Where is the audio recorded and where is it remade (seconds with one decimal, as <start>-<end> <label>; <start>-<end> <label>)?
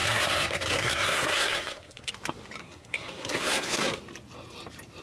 0.0-2.1 remade; 2.1-2.6 recorded; 2.6-4.0 remade; 4.0-5.0 recorded